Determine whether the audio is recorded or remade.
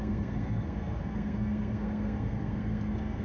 remade